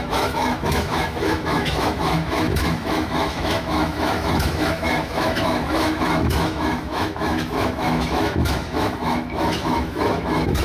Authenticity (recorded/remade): remade